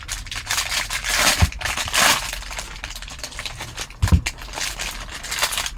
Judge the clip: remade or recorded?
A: remade